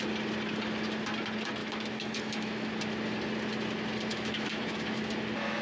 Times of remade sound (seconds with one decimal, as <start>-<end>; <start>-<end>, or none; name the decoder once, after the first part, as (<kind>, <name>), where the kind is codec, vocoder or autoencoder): 1.6-2.7 (autoencoder, DAC-VAE); 4.1-5.0